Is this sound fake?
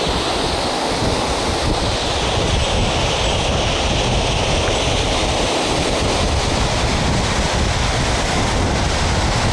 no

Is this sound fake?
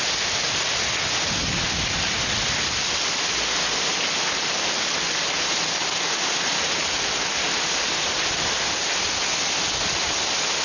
no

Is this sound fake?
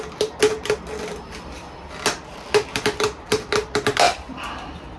no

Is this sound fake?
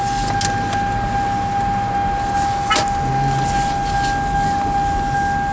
no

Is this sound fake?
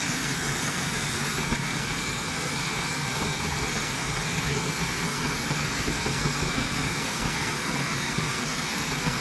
yes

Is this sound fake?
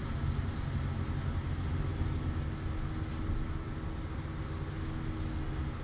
no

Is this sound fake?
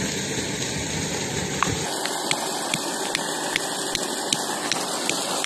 no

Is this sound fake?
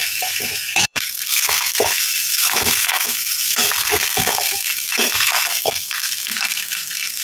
yes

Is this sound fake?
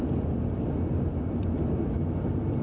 no